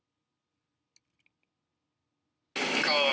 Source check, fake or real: real